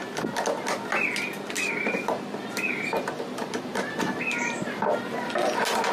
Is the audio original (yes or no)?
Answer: yes